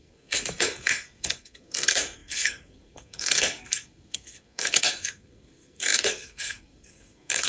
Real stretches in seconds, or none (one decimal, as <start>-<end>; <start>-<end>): none